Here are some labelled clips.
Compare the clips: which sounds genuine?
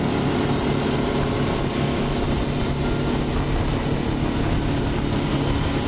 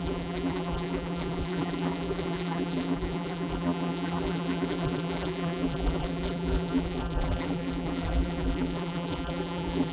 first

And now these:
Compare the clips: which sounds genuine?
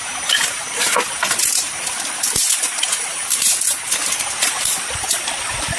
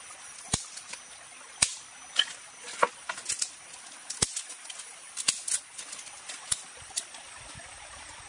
second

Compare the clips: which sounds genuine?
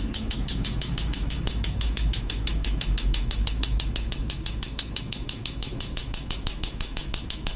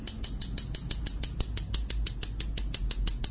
second